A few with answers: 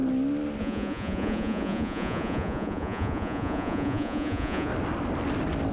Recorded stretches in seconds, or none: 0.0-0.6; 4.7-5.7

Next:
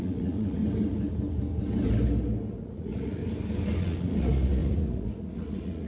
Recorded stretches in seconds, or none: 0.6-2.6; 3.2-3.8

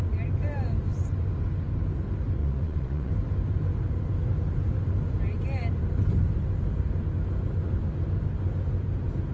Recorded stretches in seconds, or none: 0.0-2.4; 3.1-9.3

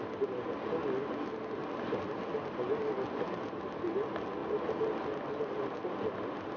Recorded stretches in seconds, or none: 0.0-6.6